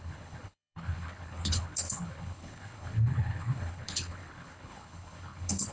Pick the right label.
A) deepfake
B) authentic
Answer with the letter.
A